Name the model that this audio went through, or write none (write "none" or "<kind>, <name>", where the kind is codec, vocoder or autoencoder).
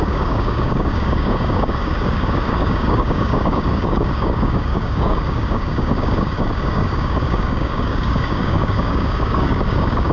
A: codec, DAC